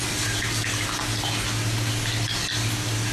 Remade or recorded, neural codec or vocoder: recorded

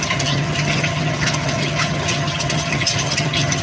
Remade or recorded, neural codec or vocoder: remade, vocoder, HiFi-GAN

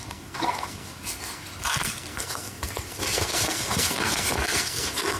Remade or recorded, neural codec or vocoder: remade, codec, SNAC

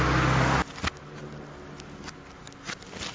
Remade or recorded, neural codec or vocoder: recorded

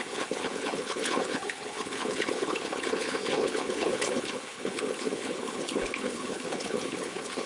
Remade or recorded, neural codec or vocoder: remade, codec, HILCodec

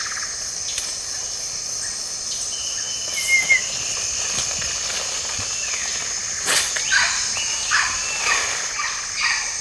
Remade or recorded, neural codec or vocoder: recorded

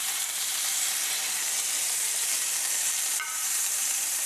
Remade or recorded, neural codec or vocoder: remade, vocoder, BigVGAN v2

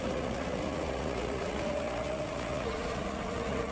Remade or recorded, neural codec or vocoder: remade, vocoder, Vocos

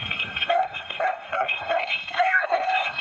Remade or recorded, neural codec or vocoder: remade, codec, SNAC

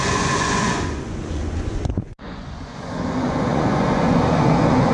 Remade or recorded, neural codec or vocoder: remade, vocoder, Vocos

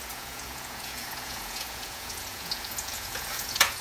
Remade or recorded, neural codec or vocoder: remade, vocoder, Vocos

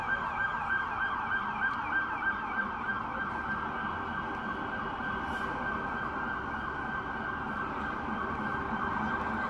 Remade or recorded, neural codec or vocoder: recorded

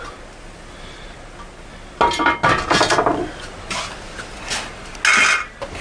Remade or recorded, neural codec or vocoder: recorded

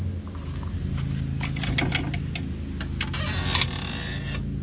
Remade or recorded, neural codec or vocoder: recorded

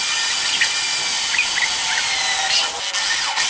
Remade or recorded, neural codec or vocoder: recorded